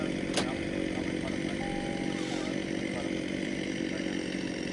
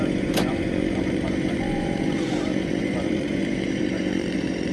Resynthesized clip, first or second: second